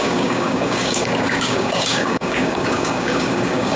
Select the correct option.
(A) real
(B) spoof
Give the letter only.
B